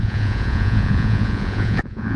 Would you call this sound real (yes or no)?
no